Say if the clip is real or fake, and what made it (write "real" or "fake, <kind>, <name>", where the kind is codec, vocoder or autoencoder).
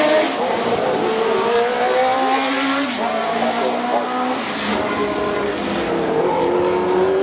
real